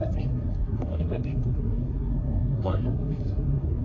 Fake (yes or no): yes